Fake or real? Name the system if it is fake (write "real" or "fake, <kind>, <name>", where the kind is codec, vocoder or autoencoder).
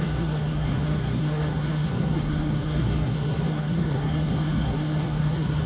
fake, codec, SNAC